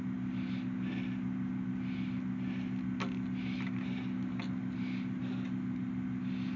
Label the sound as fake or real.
real